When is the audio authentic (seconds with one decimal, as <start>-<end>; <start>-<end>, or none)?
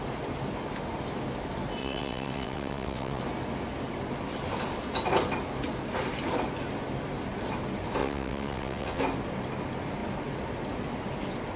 0.0-1.8; 3.2-8.0; 9.0-11.6